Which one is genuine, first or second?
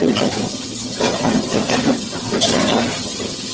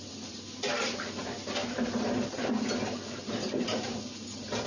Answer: second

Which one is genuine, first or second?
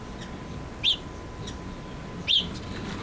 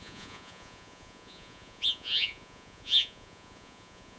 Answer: first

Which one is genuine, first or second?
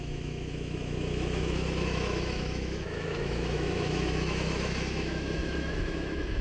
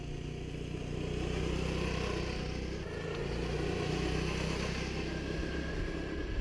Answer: second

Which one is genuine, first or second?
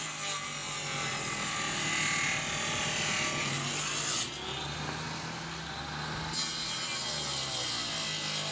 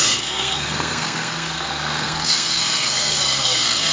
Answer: first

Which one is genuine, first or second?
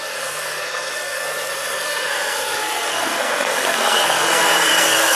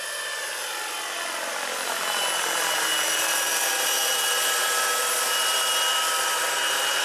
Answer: second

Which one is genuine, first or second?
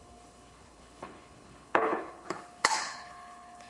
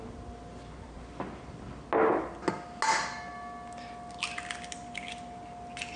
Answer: second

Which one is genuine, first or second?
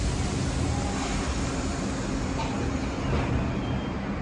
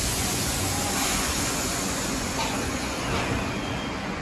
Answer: first